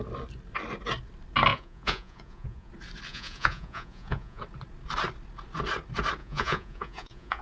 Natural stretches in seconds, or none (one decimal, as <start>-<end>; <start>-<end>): 0.0-1.5; 2.7-3.1; 4.4-6.2